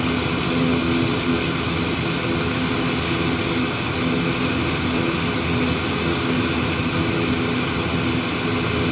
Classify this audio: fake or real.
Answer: real